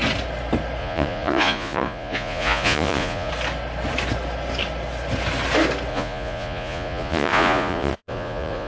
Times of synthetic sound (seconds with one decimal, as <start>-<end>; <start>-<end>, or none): 0.8-3.3; 5.9-8.7